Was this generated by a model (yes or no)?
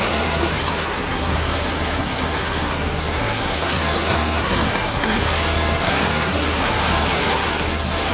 yes